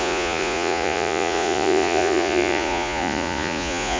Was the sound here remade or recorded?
remade